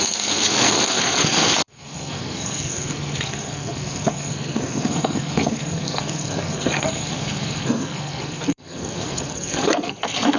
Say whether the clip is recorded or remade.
remade